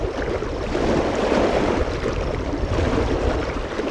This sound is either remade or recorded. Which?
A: remade